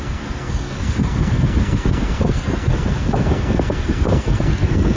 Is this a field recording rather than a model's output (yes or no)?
no